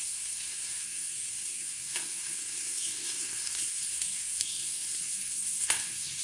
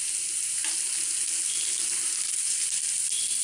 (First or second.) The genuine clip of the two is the second